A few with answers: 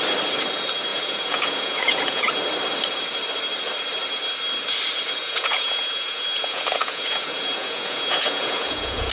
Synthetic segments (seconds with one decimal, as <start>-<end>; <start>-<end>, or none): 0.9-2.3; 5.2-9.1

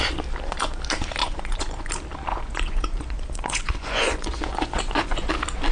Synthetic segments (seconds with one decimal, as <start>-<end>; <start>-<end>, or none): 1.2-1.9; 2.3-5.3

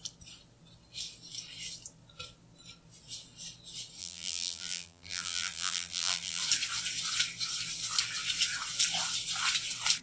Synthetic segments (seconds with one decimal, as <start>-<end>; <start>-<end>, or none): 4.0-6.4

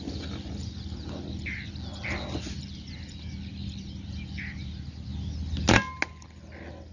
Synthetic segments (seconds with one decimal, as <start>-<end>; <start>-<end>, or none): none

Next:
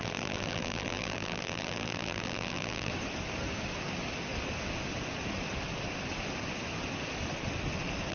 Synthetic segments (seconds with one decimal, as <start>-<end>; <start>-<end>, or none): 0.0-2.9

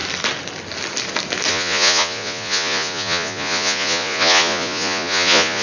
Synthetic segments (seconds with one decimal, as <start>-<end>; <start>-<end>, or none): 1.5-5.6

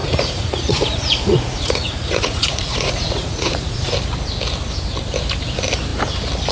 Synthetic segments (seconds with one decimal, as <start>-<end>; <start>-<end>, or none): 0.0-3.9